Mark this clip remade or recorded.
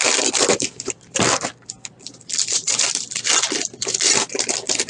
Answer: remade